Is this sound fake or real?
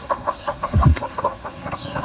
fake